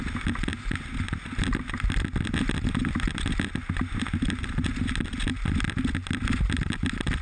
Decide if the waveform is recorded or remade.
recorded